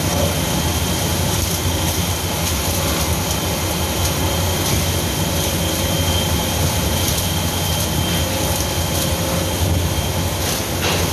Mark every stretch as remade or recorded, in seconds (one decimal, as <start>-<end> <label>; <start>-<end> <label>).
0.0-11.1 recorded